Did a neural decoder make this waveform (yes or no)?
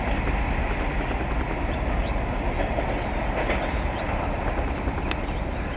no